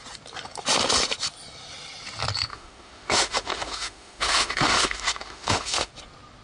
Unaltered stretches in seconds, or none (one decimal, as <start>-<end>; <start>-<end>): 0.0-2.5; 5.9-6.4